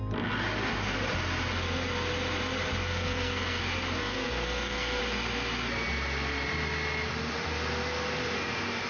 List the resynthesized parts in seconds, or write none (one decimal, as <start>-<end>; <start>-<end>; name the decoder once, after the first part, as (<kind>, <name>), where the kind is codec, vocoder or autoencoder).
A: 2.8-3.6 (codec, SNAC); 4.0-5.0